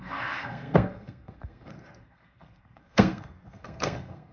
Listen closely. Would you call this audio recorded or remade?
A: remade